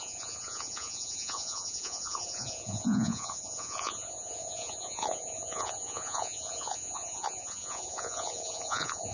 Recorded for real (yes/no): no